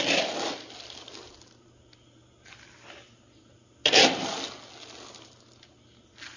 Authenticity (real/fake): real